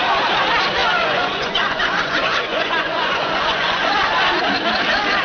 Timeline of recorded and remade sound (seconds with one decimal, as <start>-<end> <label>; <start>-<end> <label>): 0.0-0.8 recorded; 0.8-3.9 remade; 3.9-5.2 recorded